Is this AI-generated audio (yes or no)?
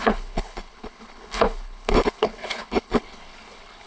yes